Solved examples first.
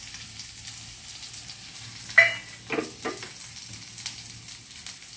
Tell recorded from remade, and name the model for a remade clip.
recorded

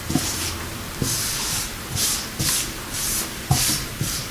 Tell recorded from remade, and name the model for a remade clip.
remade, vocoder, BigVGAN v2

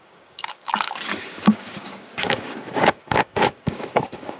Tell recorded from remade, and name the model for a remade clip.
remade, codec, DAC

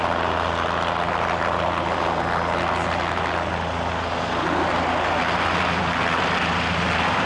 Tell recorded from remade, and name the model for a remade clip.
recorded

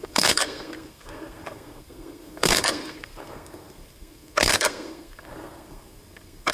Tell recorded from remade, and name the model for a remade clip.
remade, codec, SNAC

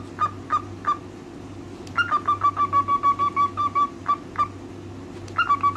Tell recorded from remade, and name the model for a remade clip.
recorded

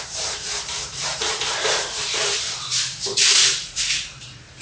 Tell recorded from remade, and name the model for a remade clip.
remade, vocoder, BigVGAN v2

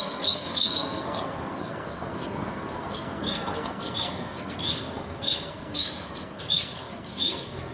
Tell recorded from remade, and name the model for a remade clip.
remade, codec, SNAC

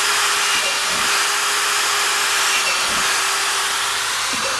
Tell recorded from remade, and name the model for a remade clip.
recorded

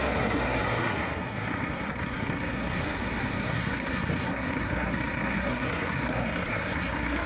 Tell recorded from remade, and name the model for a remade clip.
remade, codec, SNAC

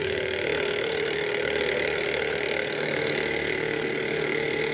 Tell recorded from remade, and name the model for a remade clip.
remade, codec, SNAC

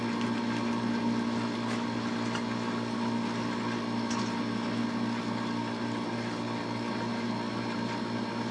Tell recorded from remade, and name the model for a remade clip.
recorded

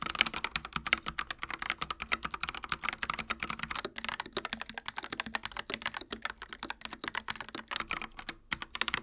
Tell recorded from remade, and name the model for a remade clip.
recorded